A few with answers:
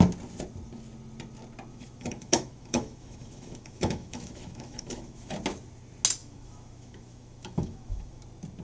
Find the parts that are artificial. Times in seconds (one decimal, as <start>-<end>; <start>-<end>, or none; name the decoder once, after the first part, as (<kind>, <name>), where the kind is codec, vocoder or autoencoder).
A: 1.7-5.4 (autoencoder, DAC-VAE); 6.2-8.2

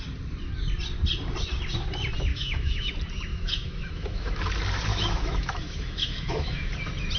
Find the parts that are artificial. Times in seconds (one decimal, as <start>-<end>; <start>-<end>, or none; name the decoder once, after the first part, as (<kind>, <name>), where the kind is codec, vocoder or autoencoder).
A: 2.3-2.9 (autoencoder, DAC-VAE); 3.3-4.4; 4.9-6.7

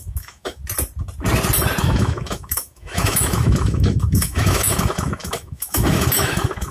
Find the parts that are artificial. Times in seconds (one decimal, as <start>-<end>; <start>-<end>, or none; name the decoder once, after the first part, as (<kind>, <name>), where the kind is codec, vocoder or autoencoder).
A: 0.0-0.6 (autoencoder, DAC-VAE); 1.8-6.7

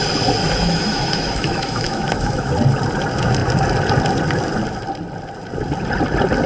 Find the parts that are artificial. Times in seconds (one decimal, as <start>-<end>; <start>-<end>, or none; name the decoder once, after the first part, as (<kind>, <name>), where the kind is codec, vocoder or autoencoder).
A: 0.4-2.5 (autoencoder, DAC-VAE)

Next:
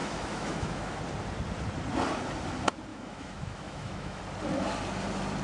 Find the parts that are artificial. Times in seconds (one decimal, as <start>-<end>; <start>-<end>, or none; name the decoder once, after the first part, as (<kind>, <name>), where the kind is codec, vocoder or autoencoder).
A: 0.0-1.0 (autoencoder, DAC-VAE); 2.9-4.2

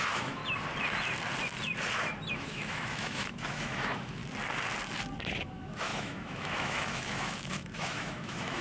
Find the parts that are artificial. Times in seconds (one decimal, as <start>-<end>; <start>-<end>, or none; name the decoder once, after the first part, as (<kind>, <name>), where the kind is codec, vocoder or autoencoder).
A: 0.0-0.4 (autoencoder, DAC-VAE); 2.3-4.2; 5.4-8.6

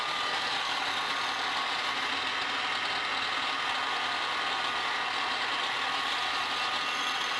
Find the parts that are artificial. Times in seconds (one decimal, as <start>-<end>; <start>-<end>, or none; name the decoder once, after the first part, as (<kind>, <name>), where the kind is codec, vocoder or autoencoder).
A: none

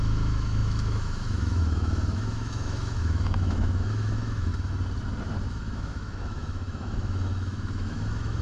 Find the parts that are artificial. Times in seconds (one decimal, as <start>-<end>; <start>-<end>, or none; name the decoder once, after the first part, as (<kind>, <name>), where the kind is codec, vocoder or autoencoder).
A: 0.0-4.5 (autoencoder, DAC-VAE); 5.5-8.4